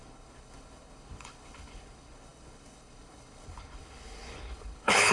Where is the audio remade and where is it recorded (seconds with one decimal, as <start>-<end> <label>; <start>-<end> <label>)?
0.0-5.1 remade